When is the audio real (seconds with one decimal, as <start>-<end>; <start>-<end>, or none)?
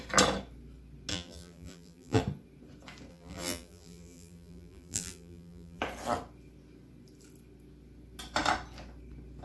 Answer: 0.0-1.1; 2.2-3.1; 5.8-9.4